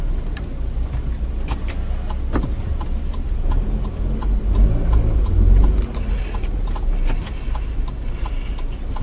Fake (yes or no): no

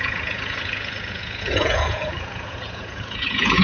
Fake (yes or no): yes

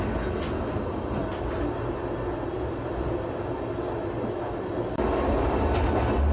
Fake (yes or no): no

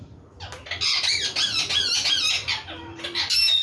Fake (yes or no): no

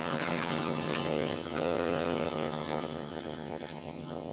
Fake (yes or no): yes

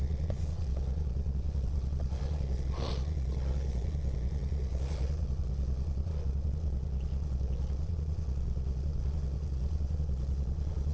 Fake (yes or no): yes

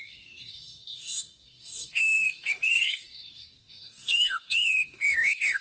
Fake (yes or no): yes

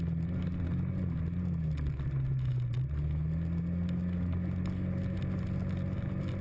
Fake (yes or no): no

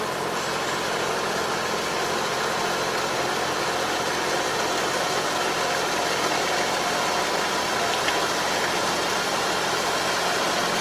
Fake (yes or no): no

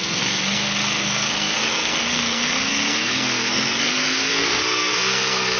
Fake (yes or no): yes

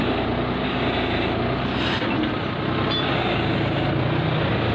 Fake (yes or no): no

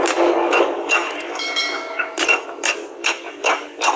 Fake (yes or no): yes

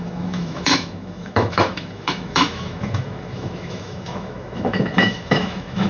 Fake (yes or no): yes